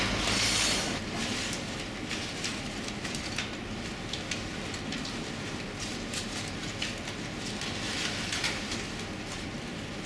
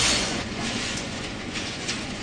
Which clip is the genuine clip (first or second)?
first